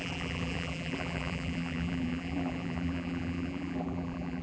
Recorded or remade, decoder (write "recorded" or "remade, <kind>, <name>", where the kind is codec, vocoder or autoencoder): remade, vocoder, BigVGAN v2